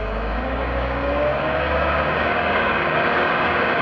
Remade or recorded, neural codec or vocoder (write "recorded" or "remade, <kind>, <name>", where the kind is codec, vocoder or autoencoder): remade, codec, DAC